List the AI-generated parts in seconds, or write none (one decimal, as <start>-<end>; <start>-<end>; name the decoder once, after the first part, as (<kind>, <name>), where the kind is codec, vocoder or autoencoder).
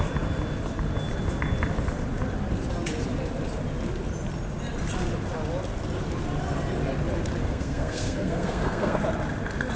7.4-9.0 (codec, SNAC)